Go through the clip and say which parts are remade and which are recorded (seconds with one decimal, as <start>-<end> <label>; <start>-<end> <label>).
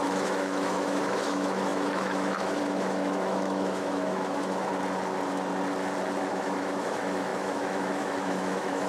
0.0-4.7 remade; 4.7-6.3 recorded; 6.3-8.9 remade